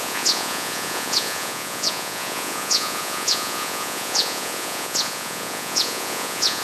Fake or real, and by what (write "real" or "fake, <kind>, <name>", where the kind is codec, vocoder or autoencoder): fake, vocoder, Vocos